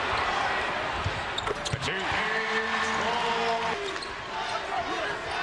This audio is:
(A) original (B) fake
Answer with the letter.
A